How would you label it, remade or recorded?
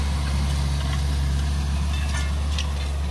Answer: recorded